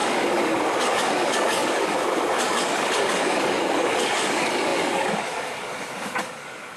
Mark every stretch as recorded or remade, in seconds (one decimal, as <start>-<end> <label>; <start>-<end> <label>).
0.0-6.8 remade